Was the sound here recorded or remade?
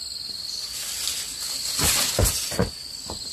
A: recorded